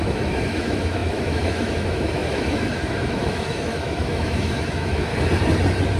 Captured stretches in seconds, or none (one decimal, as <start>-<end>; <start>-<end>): 5.1-6.0